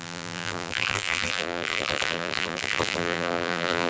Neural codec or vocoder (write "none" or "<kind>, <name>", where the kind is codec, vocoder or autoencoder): vocoder, BigVGAN v2